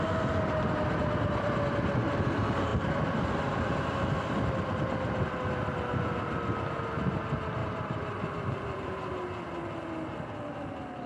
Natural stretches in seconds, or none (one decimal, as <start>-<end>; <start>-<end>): 0.0-7.6; 8.8-11.1